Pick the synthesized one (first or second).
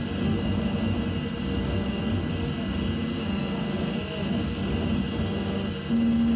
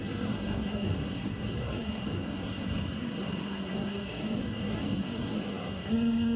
second